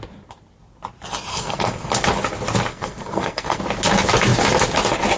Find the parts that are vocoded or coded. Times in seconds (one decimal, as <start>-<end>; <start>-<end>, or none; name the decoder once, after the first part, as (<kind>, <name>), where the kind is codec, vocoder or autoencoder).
1.3-1.9 (codec, SNAC); 2.7-3.6

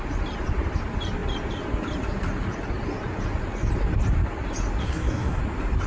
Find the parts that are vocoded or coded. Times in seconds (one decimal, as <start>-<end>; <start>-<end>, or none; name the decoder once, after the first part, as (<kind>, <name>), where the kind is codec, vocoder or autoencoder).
4.8-5.4 (codec, SNAC)

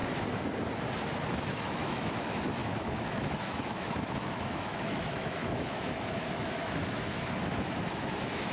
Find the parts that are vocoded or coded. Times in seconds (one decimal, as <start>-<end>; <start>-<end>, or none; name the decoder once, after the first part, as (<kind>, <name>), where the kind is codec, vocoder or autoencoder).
1.3-8.5 (autoencoder, DAC-VAE)

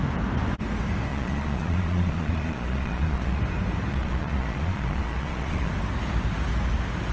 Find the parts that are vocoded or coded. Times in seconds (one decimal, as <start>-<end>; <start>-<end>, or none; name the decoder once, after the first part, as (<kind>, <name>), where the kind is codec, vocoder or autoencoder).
1.1-3.4 (vocoder, Vocos); 3.9-5.7

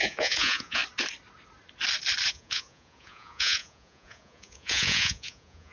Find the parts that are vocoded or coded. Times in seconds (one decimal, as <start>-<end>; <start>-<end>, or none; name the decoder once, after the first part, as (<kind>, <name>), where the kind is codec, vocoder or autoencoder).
0.0-0.8 (vocoder, Vocos); 2.3-5.7

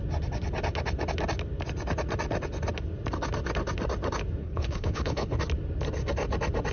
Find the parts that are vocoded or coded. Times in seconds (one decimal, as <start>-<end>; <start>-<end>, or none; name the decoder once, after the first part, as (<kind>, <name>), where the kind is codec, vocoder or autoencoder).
4.4-5.4 (codec, HILCodec)

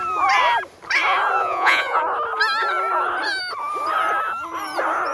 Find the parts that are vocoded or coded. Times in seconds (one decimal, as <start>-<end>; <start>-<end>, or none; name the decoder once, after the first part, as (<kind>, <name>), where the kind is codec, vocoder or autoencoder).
1.4-2.0 (vocoder, Vocos)

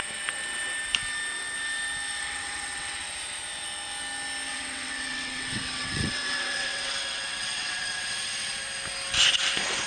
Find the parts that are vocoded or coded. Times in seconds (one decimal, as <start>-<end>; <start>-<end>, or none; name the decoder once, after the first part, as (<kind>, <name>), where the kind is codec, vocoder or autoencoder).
2.2-3.1 (vocoder, WaveNeXt); 4.5-8.6